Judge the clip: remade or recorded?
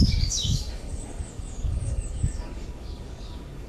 remade